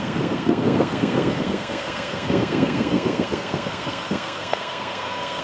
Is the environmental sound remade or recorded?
remade